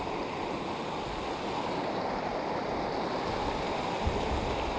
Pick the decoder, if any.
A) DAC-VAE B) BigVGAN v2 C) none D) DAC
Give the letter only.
C